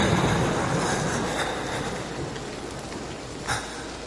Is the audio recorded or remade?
recorded